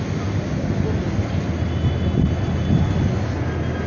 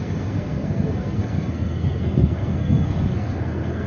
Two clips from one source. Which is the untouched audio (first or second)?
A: first